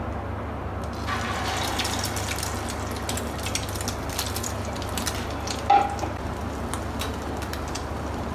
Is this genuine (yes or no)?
yes